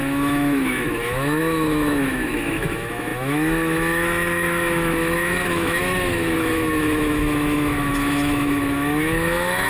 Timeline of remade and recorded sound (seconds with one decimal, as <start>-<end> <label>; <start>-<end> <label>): 0.0-9.7 remade